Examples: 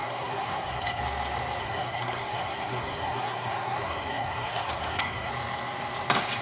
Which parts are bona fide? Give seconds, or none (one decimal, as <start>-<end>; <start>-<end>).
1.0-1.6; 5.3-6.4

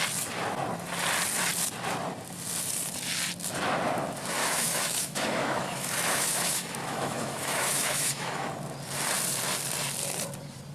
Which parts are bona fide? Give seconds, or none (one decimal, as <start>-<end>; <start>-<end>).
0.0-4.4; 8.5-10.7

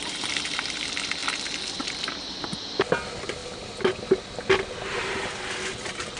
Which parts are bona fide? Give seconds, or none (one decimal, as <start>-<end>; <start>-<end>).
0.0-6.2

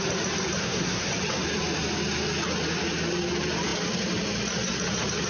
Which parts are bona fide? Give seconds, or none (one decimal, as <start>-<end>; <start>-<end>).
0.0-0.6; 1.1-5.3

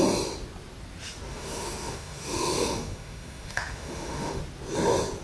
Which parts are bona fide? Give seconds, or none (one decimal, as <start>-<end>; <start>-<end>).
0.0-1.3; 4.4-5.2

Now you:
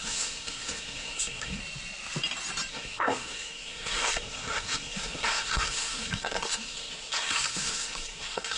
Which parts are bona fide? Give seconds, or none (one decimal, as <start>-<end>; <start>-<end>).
1.6-2.7